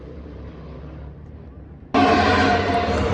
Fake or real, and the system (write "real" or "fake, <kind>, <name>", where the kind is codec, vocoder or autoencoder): fake, vocoder, BigVGAN v2